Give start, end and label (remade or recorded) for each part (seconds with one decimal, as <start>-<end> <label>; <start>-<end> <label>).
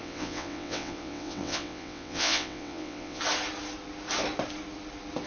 0.0-3.2 remade; 3.2-5.3 recorded